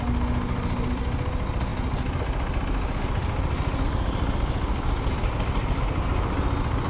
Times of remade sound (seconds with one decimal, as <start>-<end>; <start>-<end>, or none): none